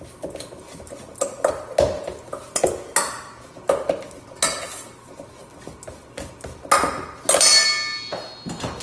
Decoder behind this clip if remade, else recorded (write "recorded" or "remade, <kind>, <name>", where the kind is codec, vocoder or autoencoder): recorded